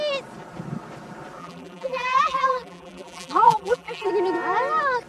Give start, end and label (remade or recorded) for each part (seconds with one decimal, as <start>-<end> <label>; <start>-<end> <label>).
0.0-1.4 recorded; 1.4-4.1 remade; 4.1-5.1 recorded